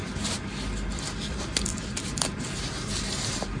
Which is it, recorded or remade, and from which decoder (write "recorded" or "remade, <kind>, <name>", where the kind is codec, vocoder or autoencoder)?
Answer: recorded